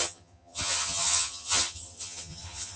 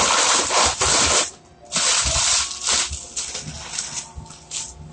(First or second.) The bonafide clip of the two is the second